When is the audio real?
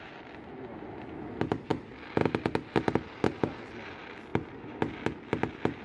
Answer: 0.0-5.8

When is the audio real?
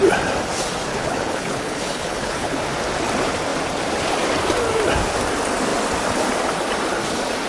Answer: 0.0-0.9; 2.6-7.5